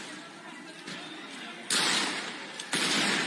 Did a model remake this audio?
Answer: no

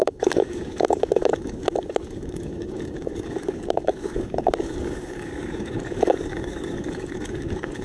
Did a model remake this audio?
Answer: yes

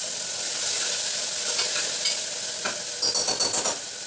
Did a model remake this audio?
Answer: no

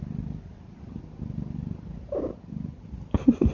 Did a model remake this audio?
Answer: no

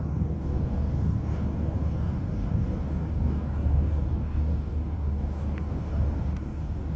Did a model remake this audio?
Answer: yes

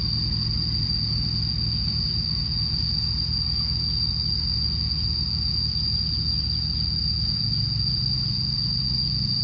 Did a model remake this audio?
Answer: no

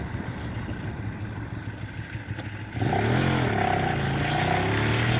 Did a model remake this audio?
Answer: no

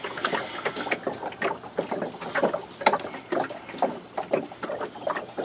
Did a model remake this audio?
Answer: no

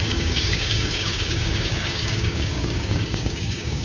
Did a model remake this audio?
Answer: yes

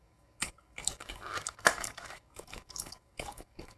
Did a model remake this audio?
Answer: yes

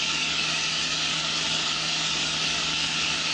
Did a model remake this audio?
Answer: yes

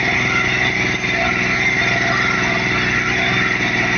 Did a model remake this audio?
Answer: no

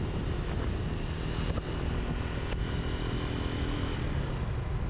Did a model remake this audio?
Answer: no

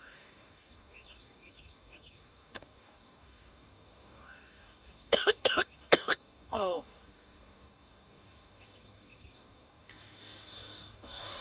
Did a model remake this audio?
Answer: yes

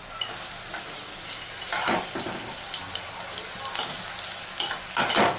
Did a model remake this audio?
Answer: no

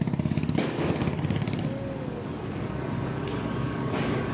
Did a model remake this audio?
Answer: yes